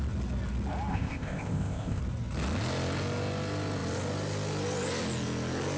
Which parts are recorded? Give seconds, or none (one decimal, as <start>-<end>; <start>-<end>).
0.0-0.9; 2.0-5.8